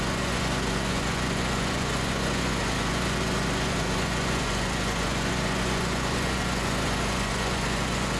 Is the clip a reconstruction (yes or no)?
yes